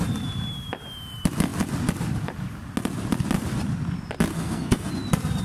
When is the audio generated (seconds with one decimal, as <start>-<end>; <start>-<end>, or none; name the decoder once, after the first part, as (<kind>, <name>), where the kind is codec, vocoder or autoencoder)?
4.3-4.9 (codec, SNAC)